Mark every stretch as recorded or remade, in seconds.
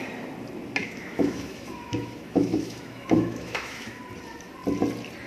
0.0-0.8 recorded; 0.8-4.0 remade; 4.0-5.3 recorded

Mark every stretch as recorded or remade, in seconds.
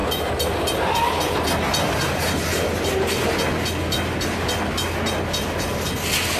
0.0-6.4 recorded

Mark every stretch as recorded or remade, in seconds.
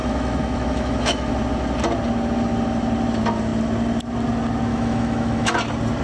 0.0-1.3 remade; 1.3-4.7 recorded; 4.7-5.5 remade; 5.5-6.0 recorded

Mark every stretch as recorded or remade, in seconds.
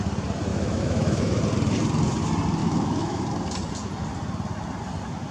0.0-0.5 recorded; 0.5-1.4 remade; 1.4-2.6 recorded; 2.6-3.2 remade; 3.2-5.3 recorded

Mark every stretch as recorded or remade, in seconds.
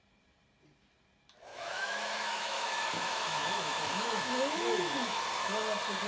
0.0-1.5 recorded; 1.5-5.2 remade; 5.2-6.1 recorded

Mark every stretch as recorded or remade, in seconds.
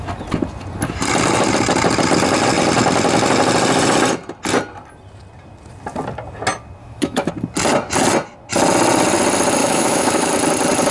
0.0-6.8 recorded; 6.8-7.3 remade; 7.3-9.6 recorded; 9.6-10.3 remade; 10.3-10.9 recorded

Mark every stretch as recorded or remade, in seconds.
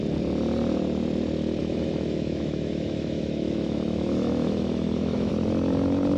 0.0-1.6 recorded; 1.6-5.3 remade; 5.3-6.2 recorded